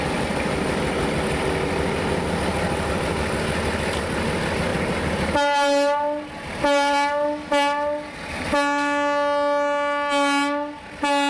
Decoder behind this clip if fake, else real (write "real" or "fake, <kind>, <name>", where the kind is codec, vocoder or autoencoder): real